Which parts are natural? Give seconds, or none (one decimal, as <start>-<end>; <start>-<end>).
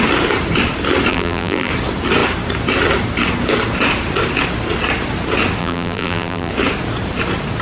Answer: 0.0-1.1; 1.7-5.6; 6.5-7.6